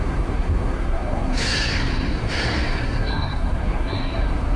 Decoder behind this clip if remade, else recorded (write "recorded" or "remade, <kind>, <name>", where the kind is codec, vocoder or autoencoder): remade, codec, SNAC